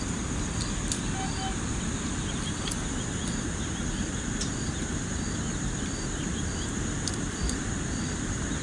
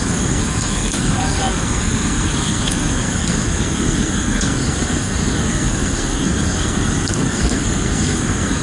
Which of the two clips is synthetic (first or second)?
second